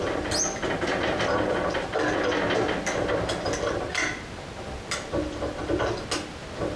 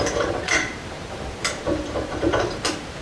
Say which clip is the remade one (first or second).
second